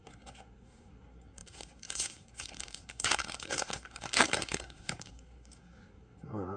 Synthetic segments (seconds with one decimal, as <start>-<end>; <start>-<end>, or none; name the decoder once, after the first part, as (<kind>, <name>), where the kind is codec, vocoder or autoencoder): 0.0-6.6 (codec, SNAC)